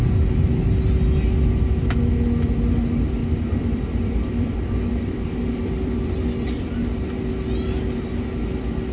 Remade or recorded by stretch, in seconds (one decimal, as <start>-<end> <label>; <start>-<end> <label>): 0.0-0.7 remade; 0.7-3.2 recorded; 3.2-6.1 remade; 6.1-8.9 recorded